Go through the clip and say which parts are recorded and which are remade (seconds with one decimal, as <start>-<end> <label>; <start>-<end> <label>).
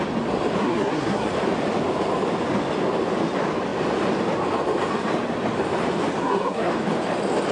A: 0.0-0.6 recorded; 0.6-1.3 remade; 1.3-6.2 recorded; 6.2-6.7 remade; 6.7-7.5 recorded